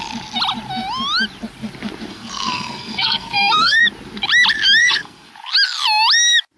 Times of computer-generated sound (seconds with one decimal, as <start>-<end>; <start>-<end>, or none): 2.1-3.8; 4.8-5.3